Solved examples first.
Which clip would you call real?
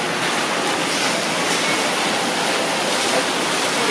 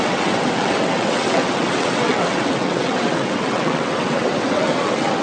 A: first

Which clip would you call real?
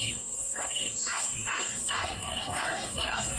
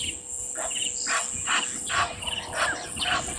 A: second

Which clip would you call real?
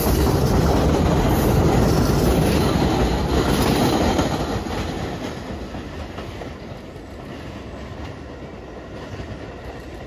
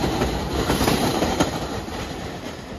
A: first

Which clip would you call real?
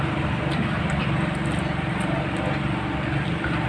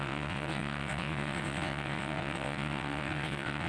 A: first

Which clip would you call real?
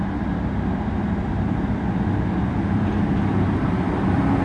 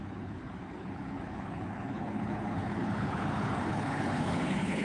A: first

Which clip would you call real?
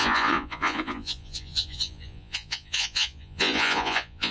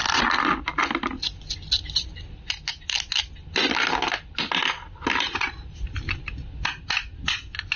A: second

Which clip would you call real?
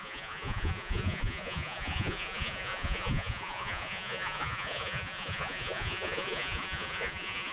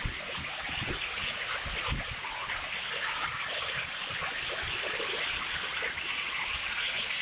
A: second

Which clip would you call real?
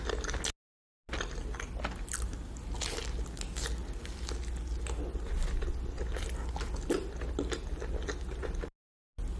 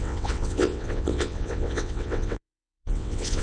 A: first